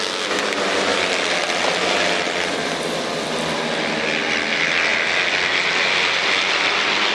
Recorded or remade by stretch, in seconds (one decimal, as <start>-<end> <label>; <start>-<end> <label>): 0.0-7.1 recorded